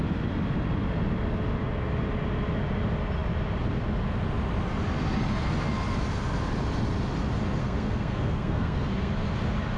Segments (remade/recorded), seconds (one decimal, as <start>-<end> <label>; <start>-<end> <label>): 0.0-7.6 recorded; 7.6-9.1 remade; 9.1-9.8 recorded